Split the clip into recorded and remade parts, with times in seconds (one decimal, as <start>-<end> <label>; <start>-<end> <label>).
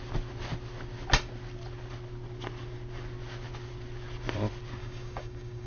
0.0-4.8 recorded; 4.8-5.7 remade